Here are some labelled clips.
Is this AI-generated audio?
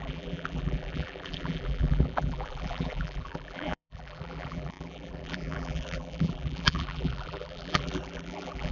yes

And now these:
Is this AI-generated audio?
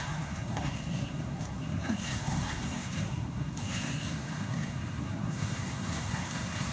yes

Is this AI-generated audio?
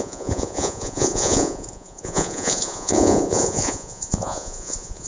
yes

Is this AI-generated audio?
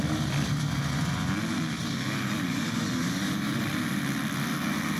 no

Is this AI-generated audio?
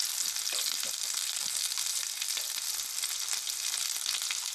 no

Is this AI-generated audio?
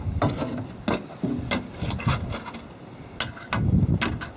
no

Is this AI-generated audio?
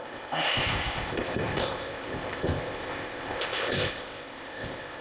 yes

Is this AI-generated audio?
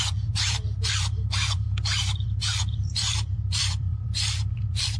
yes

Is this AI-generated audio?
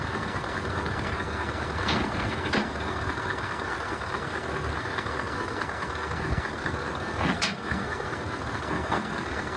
yes